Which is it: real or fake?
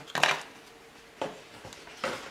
real